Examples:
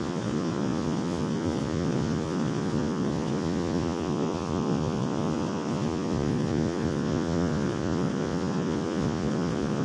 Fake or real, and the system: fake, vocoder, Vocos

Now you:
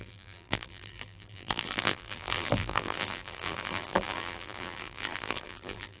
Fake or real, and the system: fake, vocoder, BigVGAN v2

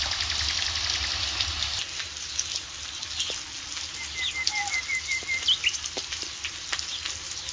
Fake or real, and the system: real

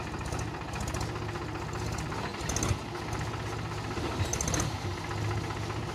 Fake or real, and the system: real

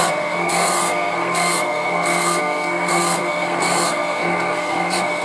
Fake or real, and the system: fake, codec, SNAC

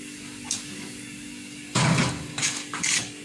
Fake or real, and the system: fake, codec, DAC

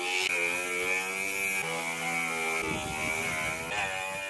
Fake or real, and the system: real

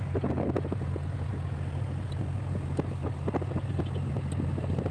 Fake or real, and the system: real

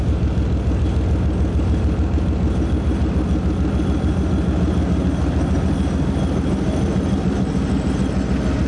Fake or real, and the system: real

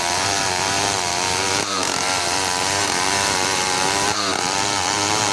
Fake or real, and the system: fake, vocoder, BigVGAN v2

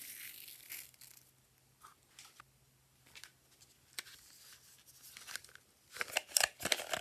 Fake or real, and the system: real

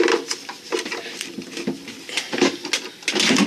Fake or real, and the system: real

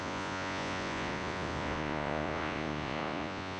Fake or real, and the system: fake, vocoder, Vocos